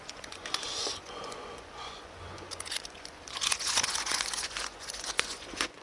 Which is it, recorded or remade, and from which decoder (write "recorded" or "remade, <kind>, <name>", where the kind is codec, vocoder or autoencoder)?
remade, vocoder, Vocos